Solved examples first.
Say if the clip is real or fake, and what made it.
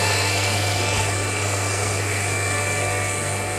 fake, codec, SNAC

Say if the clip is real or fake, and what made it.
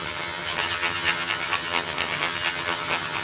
fake, vocoder, HiFi-GAN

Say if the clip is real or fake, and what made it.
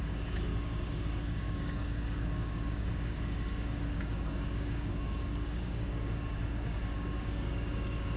fake, codec, DAC